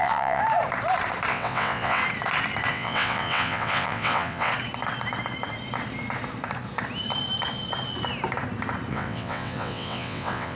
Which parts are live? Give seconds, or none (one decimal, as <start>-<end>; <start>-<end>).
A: 0.4-1.3; 2.0-2.7; 4.5-8.9